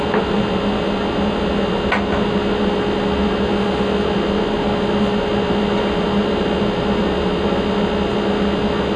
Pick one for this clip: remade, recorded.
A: recorded